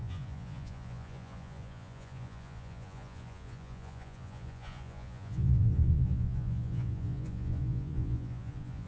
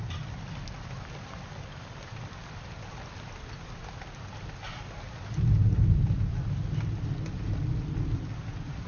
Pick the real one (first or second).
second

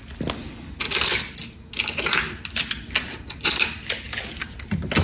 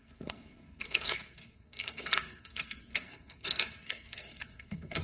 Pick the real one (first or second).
first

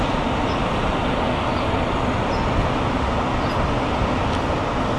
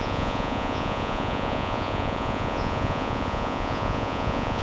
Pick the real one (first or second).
first